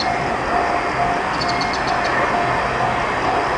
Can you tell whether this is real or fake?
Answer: real